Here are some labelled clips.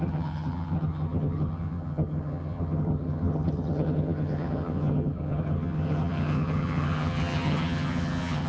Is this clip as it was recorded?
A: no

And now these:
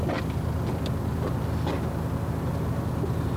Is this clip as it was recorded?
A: yes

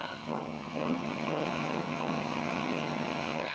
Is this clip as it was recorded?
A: no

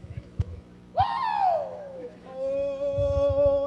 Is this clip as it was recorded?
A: no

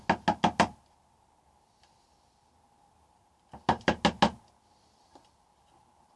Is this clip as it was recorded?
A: yes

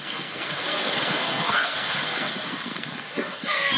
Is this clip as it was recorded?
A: no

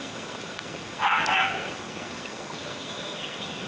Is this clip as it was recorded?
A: no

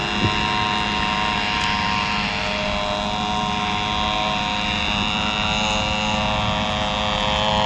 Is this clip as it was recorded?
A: yes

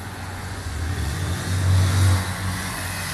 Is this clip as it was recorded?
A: no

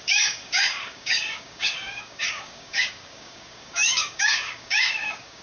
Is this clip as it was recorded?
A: no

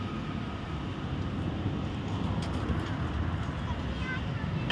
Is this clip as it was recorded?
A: yes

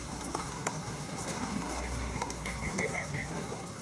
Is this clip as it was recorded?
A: no